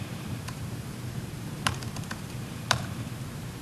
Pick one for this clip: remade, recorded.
remade